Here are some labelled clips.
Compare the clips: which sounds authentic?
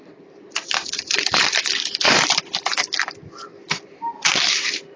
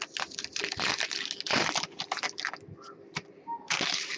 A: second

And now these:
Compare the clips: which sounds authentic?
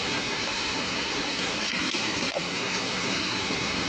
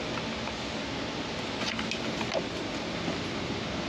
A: second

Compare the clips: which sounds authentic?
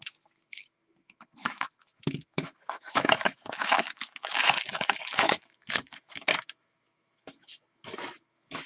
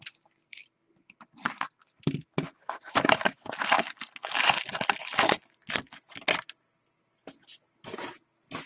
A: second